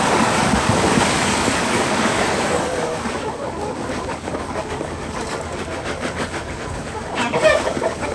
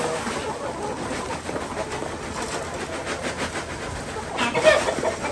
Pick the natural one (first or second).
second